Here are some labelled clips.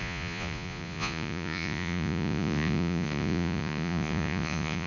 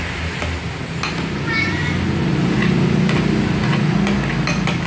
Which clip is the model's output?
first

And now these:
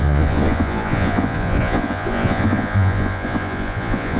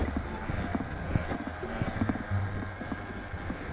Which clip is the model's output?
first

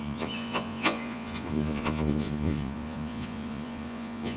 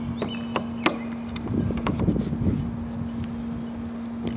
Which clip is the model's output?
first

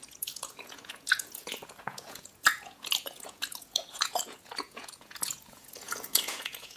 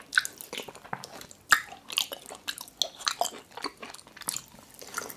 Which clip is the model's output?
first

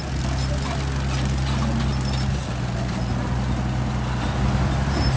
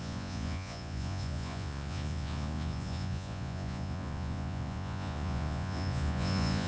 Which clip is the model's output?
second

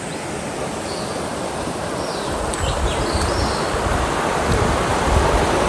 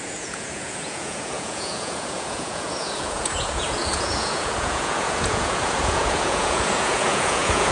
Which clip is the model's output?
second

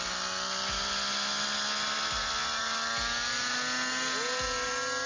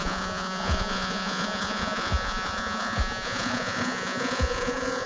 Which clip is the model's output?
second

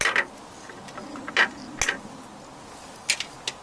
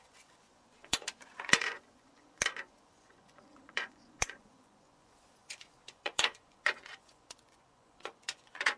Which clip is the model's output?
second